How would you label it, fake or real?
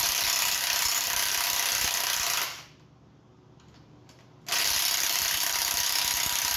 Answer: real